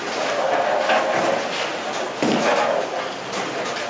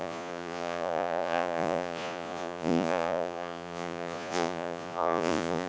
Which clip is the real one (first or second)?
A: first